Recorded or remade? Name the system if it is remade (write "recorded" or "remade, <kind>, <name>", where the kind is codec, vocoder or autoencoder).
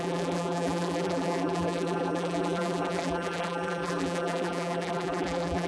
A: remade, vocoder, BigVGAN v2